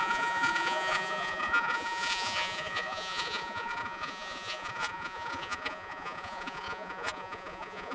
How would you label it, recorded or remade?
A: remade